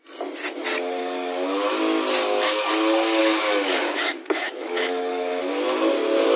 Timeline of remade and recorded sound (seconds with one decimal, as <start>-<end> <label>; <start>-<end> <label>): 0.0-1.0 recorded; 1.0-1.8 remade; 1.8-2.2 recorded; 2.2-2.7 remade; 2.7-3.2 recorded; 3.2-5.4 remade; 5.4-6.4 recorded